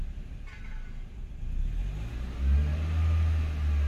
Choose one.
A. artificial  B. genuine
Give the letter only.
B